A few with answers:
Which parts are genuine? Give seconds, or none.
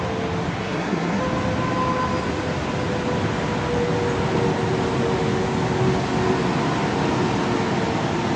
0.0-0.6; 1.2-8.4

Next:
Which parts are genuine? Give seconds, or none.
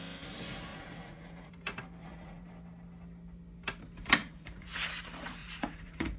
0.0-0.7; 1.5-2.0; 2.5-4.2; 4.9-5.4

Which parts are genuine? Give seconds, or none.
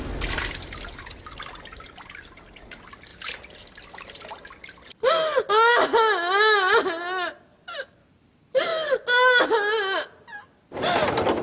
0.0-3.1; 3.8-11.4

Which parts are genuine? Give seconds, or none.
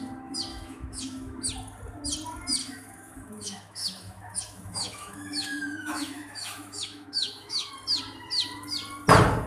0.0-0.5; 1.4-2.6; 7.7-9.5